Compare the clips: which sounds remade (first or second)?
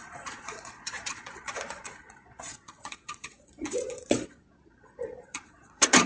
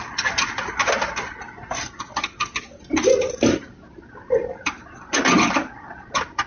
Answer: first